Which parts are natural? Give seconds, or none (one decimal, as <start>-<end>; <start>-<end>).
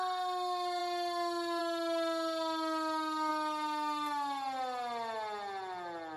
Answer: 0.0-6.2